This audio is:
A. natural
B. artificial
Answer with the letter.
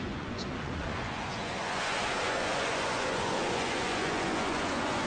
B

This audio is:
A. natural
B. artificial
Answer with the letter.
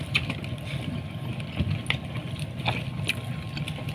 A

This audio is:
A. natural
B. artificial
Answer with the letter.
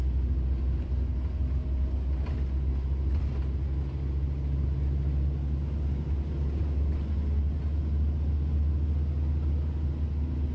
A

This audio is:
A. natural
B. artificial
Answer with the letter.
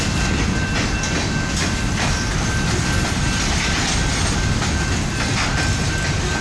A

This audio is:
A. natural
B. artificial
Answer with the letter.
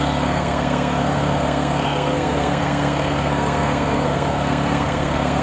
B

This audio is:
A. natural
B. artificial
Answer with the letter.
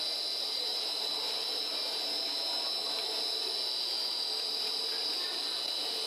A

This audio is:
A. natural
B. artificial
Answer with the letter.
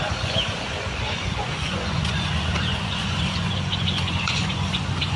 B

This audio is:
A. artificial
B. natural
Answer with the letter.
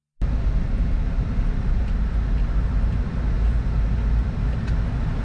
B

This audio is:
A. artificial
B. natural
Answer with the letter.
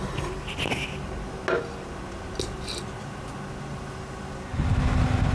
B